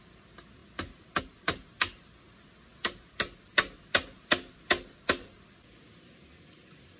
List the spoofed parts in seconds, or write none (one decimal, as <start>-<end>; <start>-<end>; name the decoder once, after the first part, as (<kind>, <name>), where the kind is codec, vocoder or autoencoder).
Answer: none